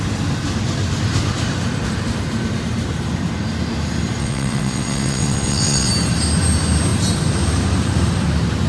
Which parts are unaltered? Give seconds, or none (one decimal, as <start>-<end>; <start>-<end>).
0.0-4.2; 5.9-8.7